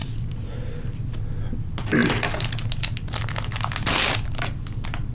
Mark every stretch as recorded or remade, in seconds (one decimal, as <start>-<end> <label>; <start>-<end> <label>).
0.0-5.1 recorded